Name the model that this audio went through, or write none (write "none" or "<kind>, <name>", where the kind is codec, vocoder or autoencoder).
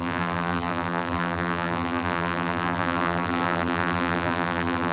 vocoder, BigVGAN v2